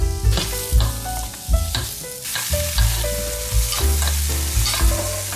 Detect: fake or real real